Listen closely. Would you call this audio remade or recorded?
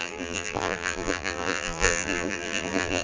remade